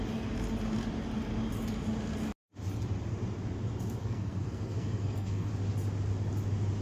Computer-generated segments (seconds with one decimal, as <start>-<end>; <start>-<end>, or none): 4.0-5.5